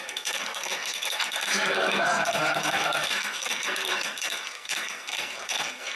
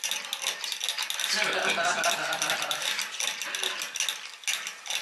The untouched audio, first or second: second